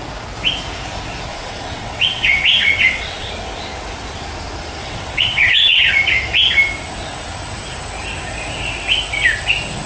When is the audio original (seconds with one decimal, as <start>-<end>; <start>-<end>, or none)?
0.0-1.3; 3.3-4.8; 5.9-9.9